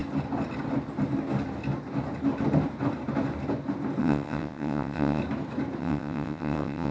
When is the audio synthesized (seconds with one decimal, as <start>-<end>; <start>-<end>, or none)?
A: 4.0-5.2; 5.8-6.9